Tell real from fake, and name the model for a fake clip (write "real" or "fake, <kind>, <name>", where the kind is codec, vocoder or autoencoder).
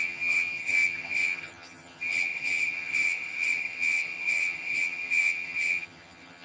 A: fake, vocoder, HiFi-GAN